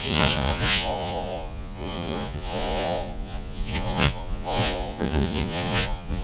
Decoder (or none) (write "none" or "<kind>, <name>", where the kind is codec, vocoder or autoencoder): vocoder, Vocos